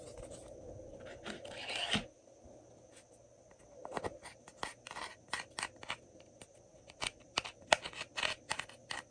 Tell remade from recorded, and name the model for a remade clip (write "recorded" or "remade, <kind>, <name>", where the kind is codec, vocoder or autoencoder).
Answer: recorded